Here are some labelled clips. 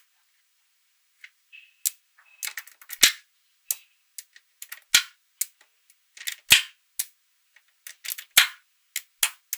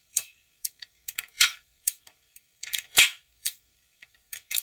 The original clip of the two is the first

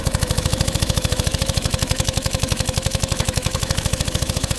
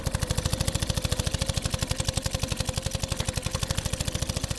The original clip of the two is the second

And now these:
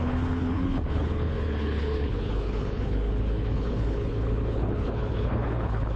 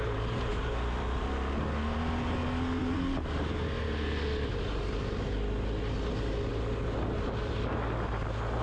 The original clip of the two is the second